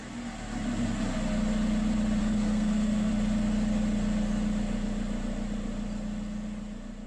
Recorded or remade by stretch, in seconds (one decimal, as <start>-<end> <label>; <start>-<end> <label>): 0.0-2.2 recorded; 2.2-3.1 remade; 3.1-7.1 recorded